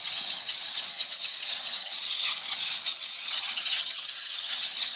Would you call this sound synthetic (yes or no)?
yes